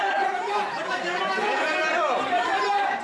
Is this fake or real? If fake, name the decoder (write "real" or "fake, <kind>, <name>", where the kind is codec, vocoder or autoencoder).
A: fake, vocoder, BigVGAN v2